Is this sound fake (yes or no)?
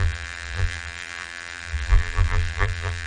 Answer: yes